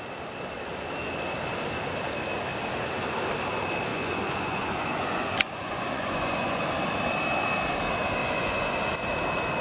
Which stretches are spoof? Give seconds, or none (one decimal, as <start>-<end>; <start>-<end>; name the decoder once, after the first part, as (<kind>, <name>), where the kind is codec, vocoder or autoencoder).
3.9-6.6 (vocoder, Vocos); 8.2-8.9